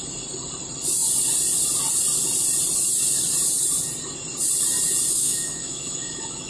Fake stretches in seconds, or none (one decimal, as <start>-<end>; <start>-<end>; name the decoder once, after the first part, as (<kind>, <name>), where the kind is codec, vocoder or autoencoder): 5.1-6.5 (autoencoder, DAC-VAE)